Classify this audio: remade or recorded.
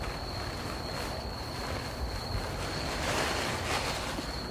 recorded